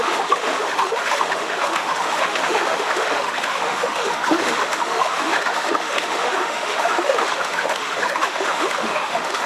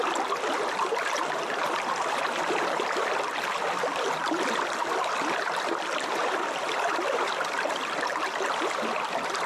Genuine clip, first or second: second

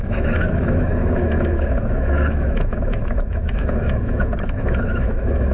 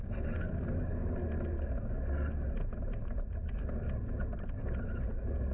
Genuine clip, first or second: second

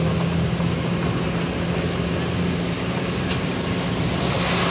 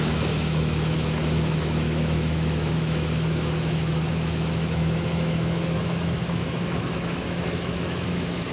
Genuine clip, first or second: first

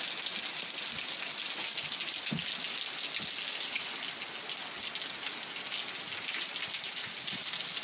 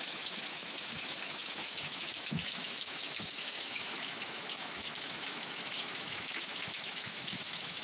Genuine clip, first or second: first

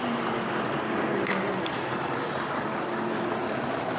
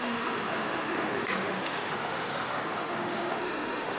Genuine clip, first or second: first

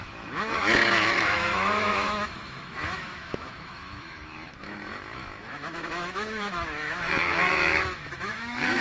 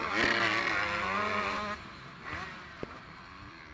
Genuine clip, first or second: second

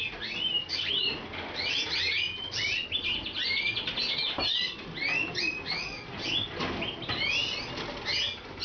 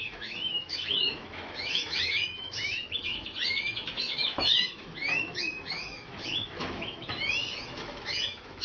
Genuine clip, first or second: first